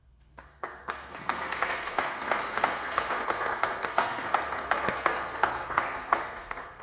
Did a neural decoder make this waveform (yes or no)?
yes